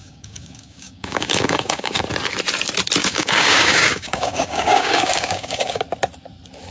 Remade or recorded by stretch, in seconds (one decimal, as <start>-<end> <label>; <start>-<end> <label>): 0.0-2.0 remade; 2.0-3.0 recorded; 3.0-5.8 remade; 5.8-6.7 recorded